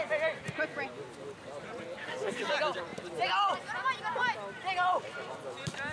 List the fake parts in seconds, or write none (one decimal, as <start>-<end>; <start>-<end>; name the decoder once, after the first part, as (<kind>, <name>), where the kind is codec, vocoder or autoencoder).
2.0-2.5 (codec, SNAC)